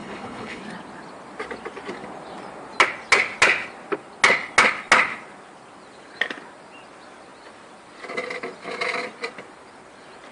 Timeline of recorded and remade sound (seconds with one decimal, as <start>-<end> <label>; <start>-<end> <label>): 0.0-0.6 remade; 0.6-10.3 recorded